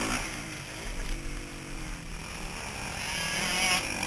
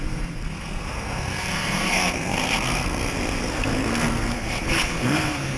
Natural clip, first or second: first